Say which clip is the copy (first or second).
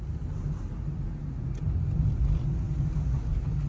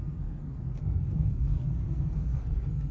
second